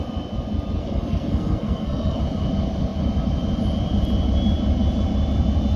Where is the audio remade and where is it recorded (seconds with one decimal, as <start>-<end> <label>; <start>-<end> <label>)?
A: 0.0-0.8 recorded; 0.8-2.2 remade; 2.2-5.8 recorded